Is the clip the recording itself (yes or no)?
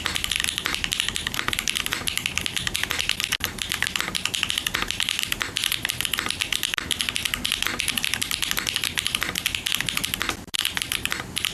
yes